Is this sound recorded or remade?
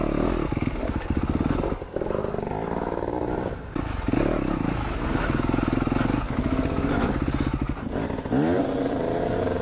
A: recorded